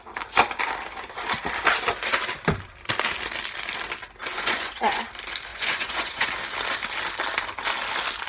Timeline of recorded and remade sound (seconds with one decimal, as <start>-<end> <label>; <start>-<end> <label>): 0.0-4.2 recorded; 4.2-5.1 remade; 5.1-5.5 recorded; 5.5-6.3 remade; 6.3-8.3 recorded